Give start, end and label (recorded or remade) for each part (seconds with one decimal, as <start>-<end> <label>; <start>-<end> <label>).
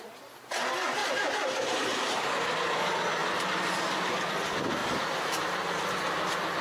0.0-1.0 recorded; 1.0-2.3 remade; 2.3-3.2 recorded; 3.2-4.1 remade; 4.1-4.8 recorded; 4.8-5.9 remade; 5.9-6.6 recorded